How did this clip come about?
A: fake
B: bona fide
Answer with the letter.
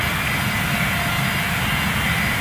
B